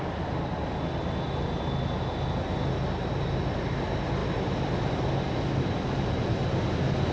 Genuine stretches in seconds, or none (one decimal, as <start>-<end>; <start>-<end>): 0.0-7.1